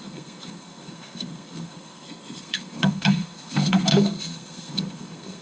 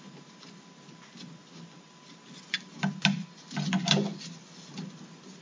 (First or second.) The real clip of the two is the second